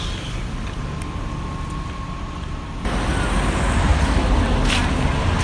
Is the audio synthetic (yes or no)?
no